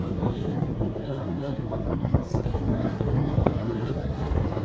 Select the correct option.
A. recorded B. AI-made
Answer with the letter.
B